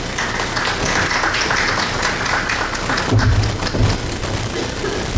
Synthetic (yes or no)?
no